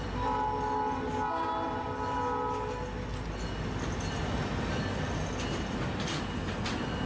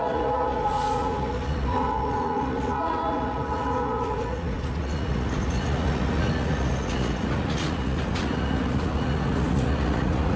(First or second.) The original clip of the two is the first